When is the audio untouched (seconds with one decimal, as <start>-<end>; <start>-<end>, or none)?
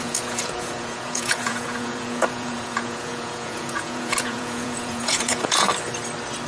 5.7-6.5